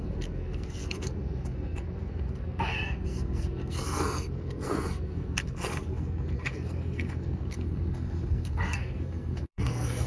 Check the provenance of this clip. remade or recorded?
remade